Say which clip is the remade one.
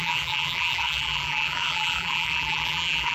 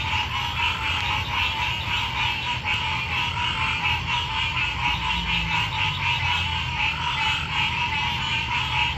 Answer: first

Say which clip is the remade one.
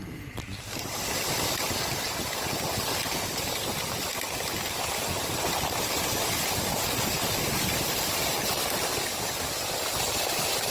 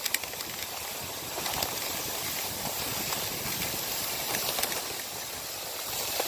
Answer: second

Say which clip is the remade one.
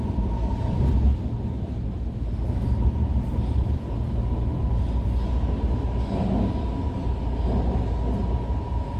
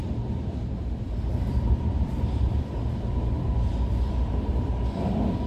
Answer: second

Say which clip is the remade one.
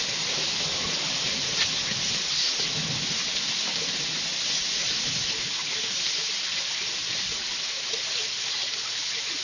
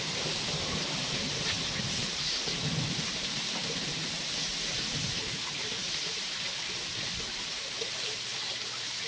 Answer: second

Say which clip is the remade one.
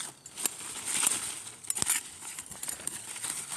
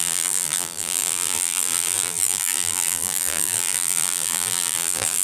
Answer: second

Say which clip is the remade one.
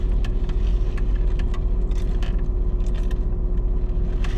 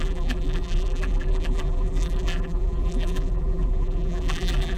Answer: second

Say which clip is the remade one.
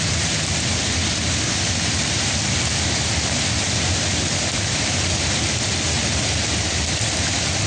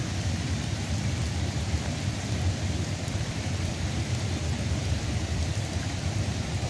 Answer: second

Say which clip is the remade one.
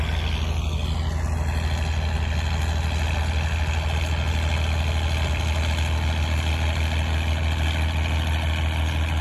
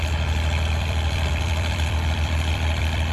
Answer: second